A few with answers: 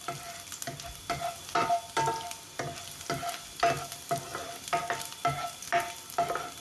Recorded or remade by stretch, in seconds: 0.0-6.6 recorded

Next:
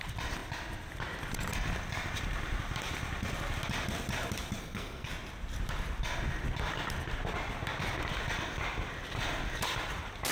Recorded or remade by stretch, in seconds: 0.0-4.6 recorded; 4.6-5.1 remade; 5.1-10.3 recorded

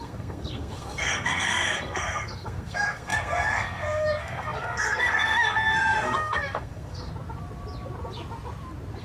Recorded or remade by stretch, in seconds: 0.0-7.1 remade; 7.1-9.0 recorded

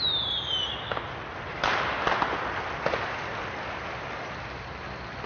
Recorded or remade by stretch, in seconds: 0.0-5.3 recorded

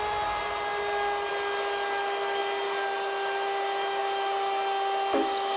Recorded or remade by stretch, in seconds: 0.0-5.6 recorded

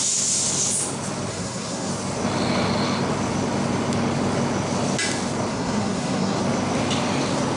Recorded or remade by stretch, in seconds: 0.0-1.3 recorded; 1.3-1.9 remade; 1.9-5.5 recorded; 5.5-6.4 remade; 6.4-7.6 recorded